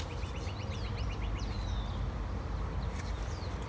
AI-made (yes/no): no